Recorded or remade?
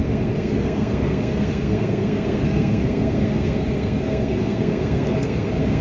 remade